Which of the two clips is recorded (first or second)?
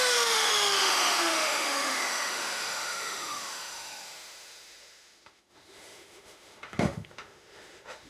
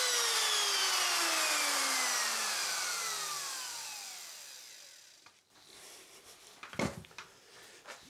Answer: second